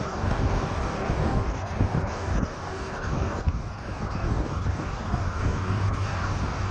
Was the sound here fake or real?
fake